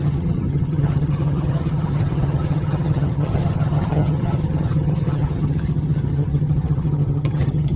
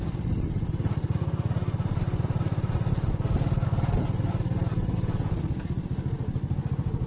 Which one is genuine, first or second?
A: second